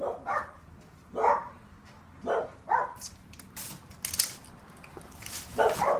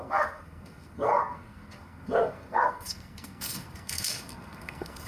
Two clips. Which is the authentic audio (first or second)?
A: first